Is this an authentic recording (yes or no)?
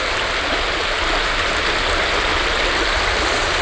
yes